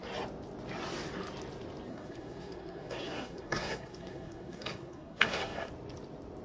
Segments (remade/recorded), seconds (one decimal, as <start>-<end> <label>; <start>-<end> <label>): 0.0-1.9 recorded; 1.9-5.7 remade; 5.7-6.4 recorded